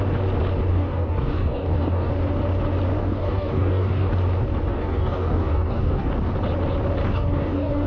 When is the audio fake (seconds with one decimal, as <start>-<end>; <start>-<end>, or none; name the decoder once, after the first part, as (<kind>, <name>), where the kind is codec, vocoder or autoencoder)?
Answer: 0.7-2.1 (codec, DAC); 3.0-4.1; 4.7-6.1; 7.1-7.9